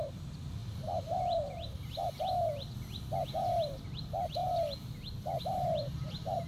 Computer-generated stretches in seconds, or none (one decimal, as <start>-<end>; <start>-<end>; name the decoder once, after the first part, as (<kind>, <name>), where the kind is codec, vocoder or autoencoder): 0.0-4.4 (vocoder, BigVGAN v2); 5.4-6.5